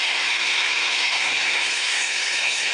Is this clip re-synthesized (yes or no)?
yes